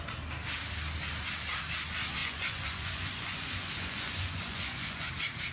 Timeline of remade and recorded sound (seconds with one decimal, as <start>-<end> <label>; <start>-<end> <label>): 0.0-2.2 recorded; 2.2-5.1 remade; 5.1-5.5 recorded